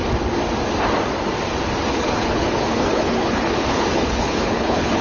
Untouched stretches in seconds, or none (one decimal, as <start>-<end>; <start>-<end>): 0.0-1.9